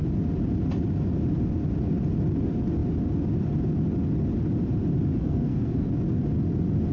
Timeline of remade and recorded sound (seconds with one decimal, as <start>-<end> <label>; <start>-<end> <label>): 0.0-5.2 recorded; 5.2-5.9 remade; 5.9-6.9 recorded